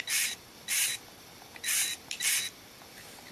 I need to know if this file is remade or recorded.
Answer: remade